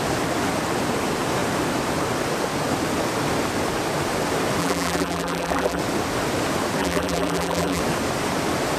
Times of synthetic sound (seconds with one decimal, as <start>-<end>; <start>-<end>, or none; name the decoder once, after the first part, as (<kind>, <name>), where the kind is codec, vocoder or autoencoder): 4.6-5.8 (vocoder, BigVGAN v2); 6.8-7.8